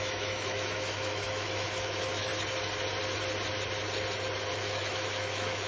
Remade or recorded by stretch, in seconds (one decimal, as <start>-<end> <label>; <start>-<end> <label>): 0.0-2.3 remade; 2.3-4.5 recorded; 4.5-5.7 remade